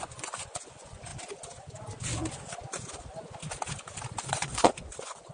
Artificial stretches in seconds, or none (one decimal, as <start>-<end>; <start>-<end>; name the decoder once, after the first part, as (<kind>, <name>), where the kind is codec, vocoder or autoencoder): 0.0-1.1 (vocoder, Vocos); 4.3-5.3